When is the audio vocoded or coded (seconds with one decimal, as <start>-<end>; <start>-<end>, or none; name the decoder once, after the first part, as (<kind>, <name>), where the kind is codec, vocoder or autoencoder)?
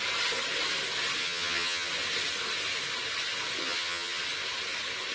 1.2-1.9 (vocoder, HiFi-GAN); 3.6-4.2